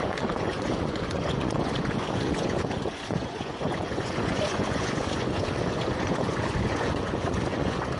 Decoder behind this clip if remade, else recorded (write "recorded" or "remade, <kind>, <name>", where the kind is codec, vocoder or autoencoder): remade, vocoder, Vocos